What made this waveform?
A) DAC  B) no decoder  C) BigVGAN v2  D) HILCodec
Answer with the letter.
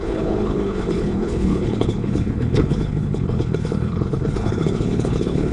D